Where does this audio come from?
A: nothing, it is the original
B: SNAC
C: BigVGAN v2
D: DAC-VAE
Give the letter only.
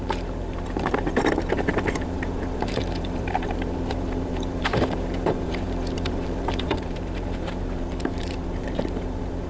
C